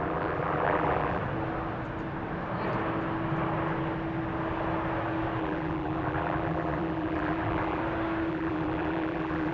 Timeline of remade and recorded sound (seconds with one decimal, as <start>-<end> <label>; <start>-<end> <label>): 0.0-1.2 remade; 1.2-5.4 recorded; 5.4-7.8 remade; 7.8-8.3 recorded; 8.3-9.5 remade